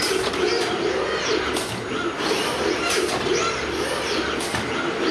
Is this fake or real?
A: fake